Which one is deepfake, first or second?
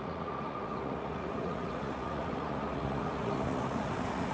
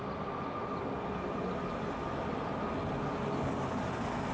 first